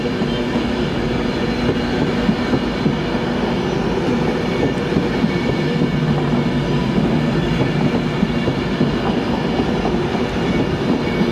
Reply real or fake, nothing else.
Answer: real